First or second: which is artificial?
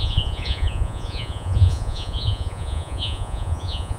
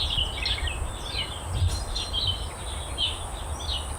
first